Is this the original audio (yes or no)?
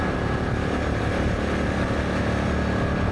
yes